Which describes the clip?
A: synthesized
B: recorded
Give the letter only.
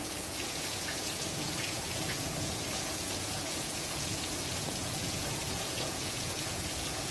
A